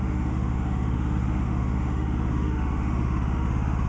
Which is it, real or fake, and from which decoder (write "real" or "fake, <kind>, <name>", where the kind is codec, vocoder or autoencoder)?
fake, autoencoder, DAC-VAE